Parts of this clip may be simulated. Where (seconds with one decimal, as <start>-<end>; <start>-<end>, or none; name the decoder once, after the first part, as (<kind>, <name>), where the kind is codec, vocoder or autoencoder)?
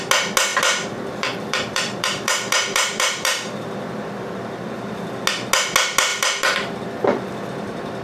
0.5-4.5 (vocoder, BigVGAN v2); 6.1-6.8